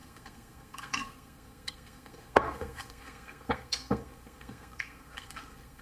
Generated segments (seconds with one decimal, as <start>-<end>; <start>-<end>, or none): 0.0-5.8